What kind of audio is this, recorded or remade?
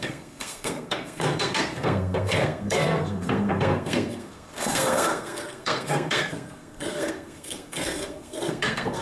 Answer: remade